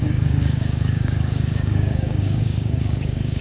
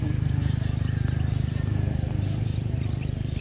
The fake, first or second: first